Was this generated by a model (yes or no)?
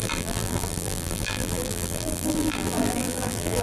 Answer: yes